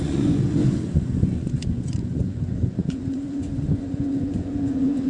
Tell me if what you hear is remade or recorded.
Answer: remade